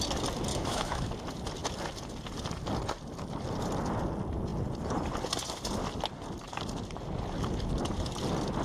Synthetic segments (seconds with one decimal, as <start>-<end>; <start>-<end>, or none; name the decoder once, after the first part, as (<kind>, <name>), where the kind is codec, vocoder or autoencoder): 0.5-1.1 (autoencoder, DAC-VAE)